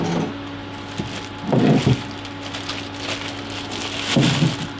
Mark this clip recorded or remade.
recorded